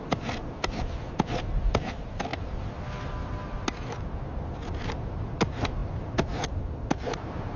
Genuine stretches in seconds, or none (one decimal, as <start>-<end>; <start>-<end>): 0.0-7.6